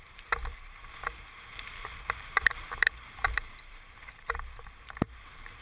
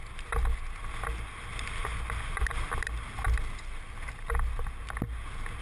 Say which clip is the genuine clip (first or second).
second